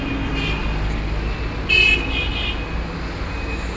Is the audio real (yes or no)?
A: yes